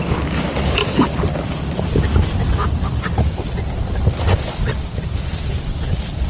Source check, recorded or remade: recorded